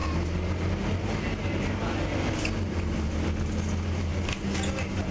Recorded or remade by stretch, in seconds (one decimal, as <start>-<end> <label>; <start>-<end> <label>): 0.0-5.1 recorded